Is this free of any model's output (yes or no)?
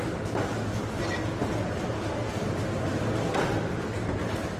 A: yes